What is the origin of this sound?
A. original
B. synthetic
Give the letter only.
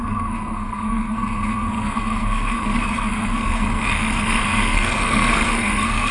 B